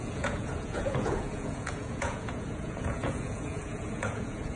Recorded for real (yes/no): no